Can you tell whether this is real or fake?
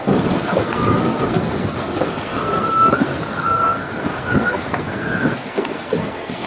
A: fake